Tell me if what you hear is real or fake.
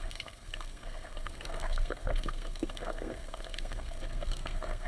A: fake